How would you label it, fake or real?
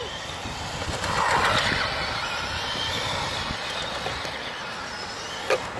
real